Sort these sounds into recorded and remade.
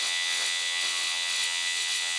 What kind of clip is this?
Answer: remade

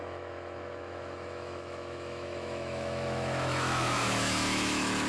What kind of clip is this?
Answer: remade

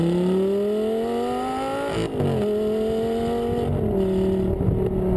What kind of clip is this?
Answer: recorded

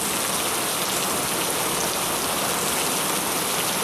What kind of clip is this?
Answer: recorded